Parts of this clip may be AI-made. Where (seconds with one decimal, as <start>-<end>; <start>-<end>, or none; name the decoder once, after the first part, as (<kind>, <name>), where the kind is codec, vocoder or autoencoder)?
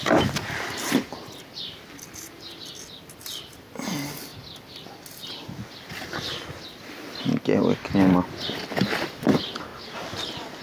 none